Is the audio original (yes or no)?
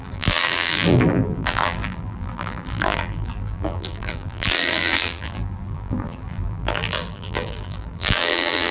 no